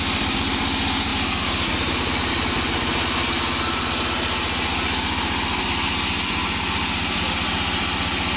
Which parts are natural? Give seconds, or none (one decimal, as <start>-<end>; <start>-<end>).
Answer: 0.0-8.4